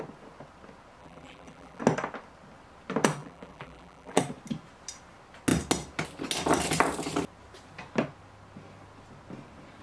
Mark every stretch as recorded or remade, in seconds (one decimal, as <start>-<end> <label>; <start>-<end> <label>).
0.0-1.0 recorded; 1.0-1.8 remade; 1.8-3.2 recorded; 3.2-4.2 remade; 4.2-9.8 recorded